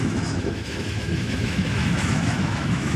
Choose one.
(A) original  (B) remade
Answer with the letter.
B